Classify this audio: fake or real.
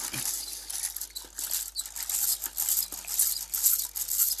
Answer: real